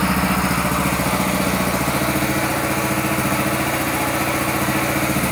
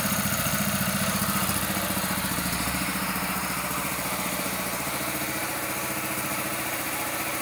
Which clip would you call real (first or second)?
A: first